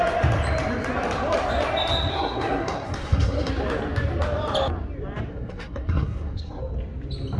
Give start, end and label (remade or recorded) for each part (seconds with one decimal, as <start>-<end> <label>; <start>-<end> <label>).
0.0-2.1 recorded; 2.1-3.5 remade; 3.5-5.3 recorded; 5.3-6.6 remade; 6.6-7.4 recorded